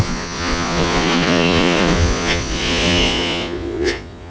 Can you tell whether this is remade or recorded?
remade